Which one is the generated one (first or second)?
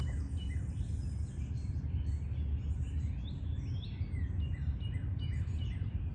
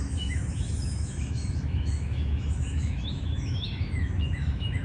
second